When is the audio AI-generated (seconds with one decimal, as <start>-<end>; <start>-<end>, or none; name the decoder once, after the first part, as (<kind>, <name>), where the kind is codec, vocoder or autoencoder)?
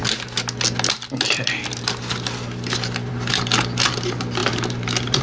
4.4-5.2 (vocoder, BigVGAN v2)